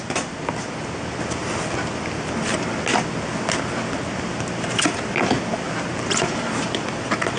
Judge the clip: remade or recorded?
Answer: recorded